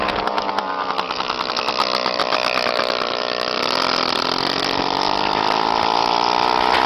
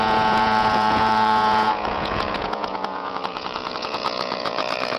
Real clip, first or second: first